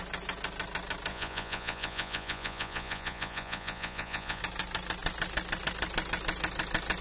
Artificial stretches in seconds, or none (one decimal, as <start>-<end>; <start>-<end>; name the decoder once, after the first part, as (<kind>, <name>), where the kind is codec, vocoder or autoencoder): 1.1-4.4 (vocoder, Vocos)